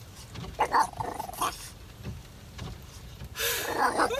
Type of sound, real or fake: real